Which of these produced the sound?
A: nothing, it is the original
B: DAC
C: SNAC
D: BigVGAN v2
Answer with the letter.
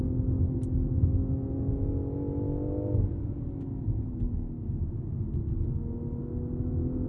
A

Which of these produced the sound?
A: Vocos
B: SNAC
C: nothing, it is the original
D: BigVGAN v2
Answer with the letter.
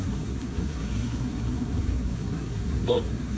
B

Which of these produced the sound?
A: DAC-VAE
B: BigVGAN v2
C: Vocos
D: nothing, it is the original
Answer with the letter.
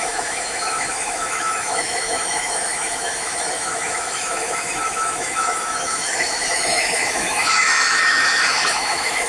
A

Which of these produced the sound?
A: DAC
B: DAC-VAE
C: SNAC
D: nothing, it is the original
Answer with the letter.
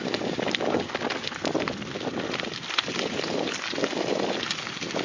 D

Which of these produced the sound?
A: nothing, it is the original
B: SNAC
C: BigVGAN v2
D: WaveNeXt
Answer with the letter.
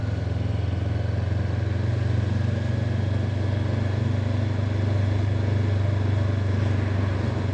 A